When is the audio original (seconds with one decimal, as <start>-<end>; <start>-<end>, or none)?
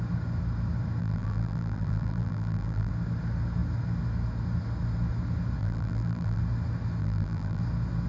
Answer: 0.0-1.0; 2.9-5.6; 6.4-7.0; 7.6-8.1